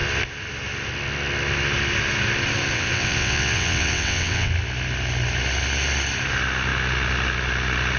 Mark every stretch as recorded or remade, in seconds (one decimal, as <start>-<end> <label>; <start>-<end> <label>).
0.0-2.7 recorded; 2.7-4.5 remade; 4.5-8.0 recorded